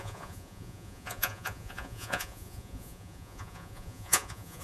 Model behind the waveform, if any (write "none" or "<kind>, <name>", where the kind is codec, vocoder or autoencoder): vocoder, Vocos